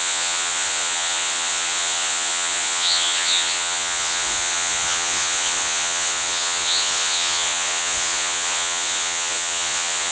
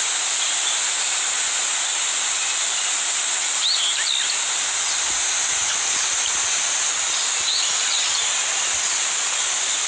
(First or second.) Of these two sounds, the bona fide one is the second